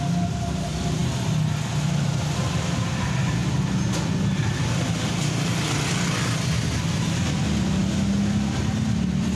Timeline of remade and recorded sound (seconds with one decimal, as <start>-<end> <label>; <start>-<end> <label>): 0.0-9.4 recorded